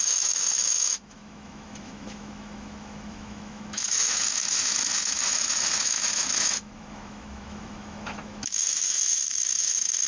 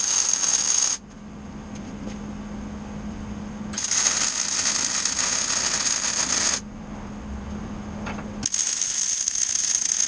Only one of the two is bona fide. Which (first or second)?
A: second